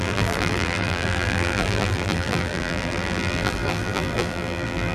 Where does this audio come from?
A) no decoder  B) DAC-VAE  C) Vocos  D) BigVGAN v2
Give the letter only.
D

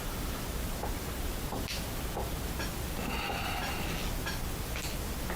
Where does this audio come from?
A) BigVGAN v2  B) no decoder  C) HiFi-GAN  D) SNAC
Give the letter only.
B